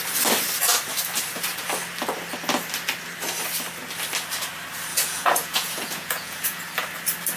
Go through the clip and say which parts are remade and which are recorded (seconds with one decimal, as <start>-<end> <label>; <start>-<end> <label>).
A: 0.0-4.9 recorded; 4.9-6.6 remade; 6.6-7.4 recorded